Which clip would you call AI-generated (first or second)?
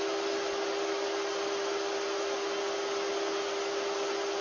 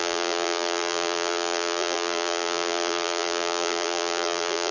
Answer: second